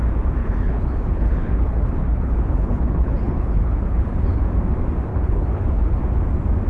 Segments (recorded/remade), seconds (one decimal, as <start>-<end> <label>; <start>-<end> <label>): 0.0-0.4 recorded; 0.4-4.4 remade; 4.4-5.1 recorded; 5.1-6.0 remade; 6.0-6.7 recorded